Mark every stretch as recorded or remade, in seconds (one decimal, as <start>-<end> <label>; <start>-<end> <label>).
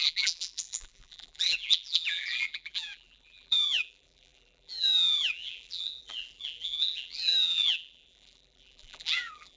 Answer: 0.0-9.6 remade